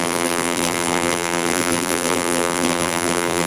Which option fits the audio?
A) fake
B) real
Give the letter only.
A